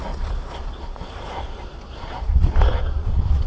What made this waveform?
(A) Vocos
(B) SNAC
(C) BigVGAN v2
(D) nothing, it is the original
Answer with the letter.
A